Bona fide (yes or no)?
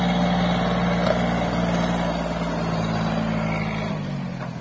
yes